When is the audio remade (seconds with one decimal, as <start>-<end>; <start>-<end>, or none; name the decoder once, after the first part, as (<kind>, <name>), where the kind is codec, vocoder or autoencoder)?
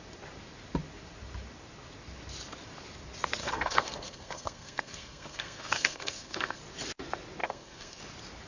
3.4-6.6 (codec, SNAC); 7.4-8.0